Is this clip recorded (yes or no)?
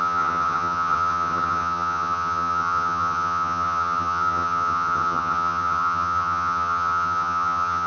no